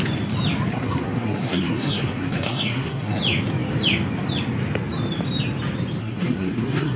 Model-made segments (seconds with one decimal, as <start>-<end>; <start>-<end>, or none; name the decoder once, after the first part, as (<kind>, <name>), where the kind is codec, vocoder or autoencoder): 0.7-3.2 (codec, SNAC); 6.0-7.0